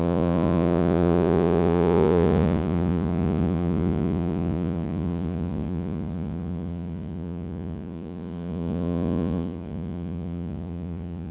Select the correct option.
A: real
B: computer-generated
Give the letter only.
B